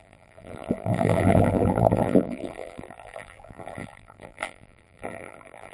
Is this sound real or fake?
fake